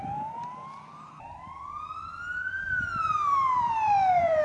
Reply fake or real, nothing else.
fake